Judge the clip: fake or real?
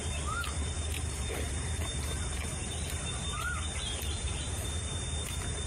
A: fake